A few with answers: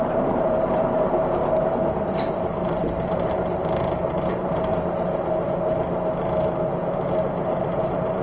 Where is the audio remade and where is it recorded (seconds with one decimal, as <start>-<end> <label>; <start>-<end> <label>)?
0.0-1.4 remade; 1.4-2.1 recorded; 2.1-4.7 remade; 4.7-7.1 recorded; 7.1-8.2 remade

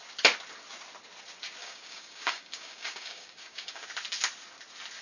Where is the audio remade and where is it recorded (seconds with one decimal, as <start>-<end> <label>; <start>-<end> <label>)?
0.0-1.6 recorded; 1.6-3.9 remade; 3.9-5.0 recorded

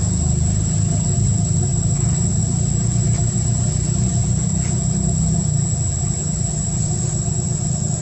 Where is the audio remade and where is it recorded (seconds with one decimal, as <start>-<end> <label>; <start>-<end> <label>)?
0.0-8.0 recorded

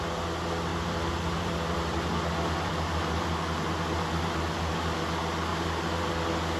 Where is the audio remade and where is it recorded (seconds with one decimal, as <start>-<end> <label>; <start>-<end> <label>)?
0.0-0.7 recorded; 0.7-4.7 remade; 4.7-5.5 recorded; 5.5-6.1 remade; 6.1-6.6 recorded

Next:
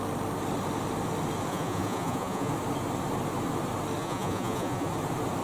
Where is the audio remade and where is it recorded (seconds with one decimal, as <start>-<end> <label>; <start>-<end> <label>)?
0.0-1.5 recorded; 1.5-2.5 remade; 2.5-4.0 recorded; 4.0-4.9 remade; 4.9-5.4 recorded